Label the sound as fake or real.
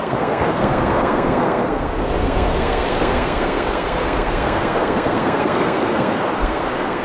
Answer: fake